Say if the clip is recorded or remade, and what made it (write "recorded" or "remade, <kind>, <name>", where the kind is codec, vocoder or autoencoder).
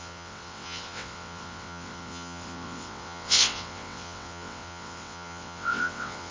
remade, vocoder, WaveNeXt